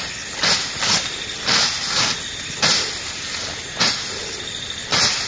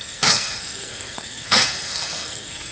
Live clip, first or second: first